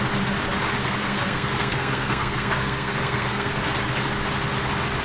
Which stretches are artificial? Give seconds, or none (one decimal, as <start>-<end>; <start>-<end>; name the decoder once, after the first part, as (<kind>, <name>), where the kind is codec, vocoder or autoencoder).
0.8-3.5 (codec, SNAC)